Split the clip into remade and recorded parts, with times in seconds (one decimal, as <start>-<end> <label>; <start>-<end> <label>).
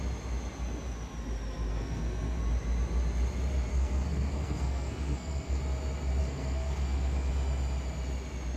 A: 0.0-1.7 recorded; 1.7-2.4 remade; 2.4-3.7 recorded; 3.7-5.6 remade; 5.6-6.2 recorded; 6.2-7.3 remade; 7.3-8.6 recorded